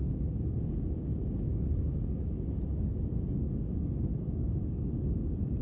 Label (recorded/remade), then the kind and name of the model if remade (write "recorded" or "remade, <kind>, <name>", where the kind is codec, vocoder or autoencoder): remade, codec, DAC